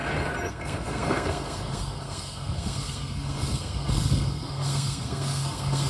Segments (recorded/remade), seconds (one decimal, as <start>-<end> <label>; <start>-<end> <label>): 0.0-0.5 recorded; 0.5-5.9 remade